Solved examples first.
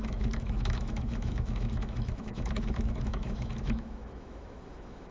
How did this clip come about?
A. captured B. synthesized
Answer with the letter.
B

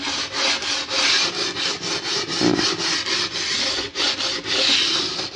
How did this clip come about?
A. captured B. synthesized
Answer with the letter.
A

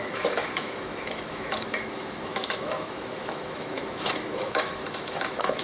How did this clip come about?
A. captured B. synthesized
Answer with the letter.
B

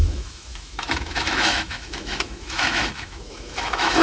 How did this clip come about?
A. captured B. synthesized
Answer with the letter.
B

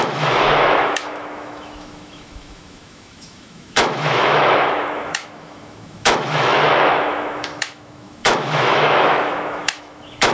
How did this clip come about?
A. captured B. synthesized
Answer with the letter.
B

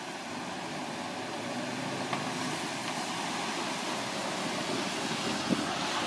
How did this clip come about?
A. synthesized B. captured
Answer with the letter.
B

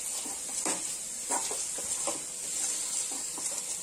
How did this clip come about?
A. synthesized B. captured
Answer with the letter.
B